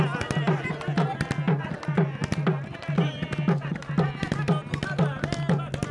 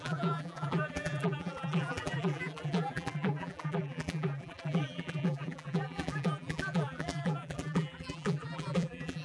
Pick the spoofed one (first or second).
second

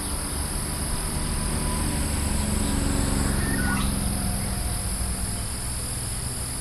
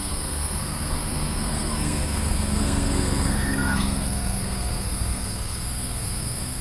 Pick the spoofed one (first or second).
second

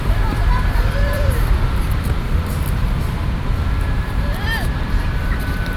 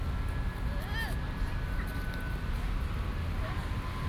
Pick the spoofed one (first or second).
first